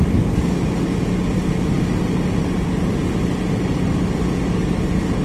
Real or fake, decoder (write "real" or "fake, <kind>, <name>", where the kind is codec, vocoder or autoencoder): real